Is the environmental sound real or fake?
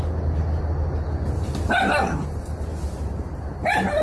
real